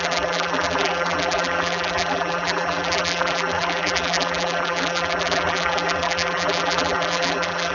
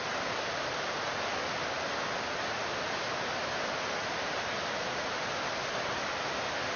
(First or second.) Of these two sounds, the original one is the second